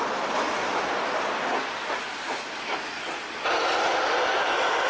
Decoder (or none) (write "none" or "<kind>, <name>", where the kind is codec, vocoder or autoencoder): none